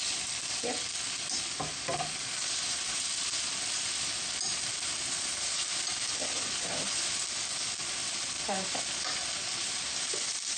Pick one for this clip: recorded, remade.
recorded